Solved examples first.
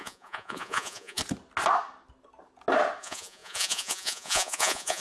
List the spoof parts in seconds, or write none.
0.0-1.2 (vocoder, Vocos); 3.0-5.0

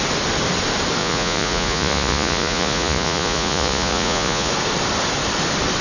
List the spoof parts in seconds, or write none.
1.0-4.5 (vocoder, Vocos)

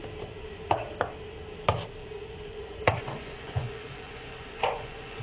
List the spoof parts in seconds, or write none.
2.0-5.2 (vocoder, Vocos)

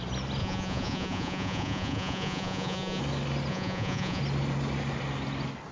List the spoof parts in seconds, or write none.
0.4-3.0 (vocoder, Vocos); 3.5-4.2

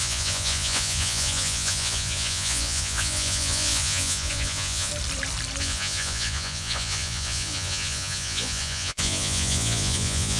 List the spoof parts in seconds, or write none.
0.0-4.9 (vocoder, Vocos); 5.6-10.4